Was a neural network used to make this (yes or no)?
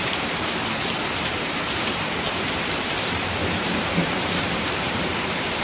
yes